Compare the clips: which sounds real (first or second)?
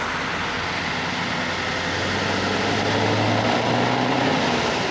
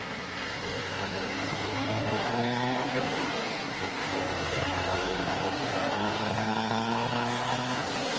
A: first